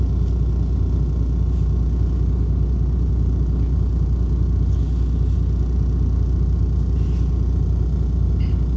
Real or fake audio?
real